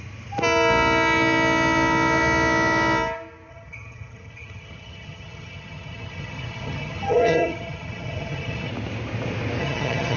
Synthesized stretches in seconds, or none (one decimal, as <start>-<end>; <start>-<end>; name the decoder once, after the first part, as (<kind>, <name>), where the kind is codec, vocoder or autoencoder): 3.5-8.7 (vocoder, HiFi-GAN); 9.6-10.2